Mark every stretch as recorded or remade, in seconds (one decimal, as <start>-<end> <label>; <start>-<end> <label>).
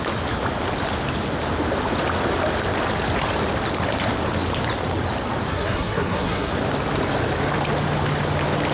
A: 0.0-5.5 recorded; 5.5-6.5 remade; 6.5-8.7 recorded